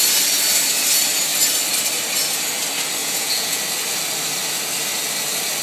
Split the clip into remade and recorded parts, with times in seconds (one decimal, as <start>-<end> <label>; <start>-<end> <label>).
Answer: 0.0-3.0 recorded; 3.0-3.6 remade; 3.6-5.6 recorded